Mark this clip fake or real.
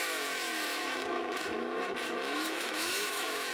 fake